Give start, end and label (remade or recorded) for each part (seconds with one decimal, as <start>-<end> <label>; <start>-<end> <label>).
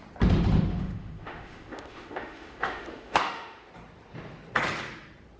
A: 0.0-0.7 recorded; 0.7-3.7 remade; 3.7-5.4 recorded